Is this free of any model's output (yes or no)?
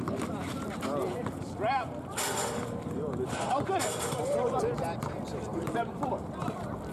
no